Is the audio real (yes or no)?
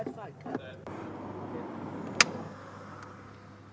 yes